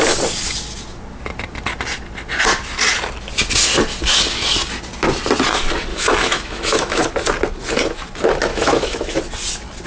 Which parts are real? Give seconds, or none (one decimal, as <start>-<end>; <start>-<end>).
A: 0.0-5.9; 7.0-8.5; 9.2-9.9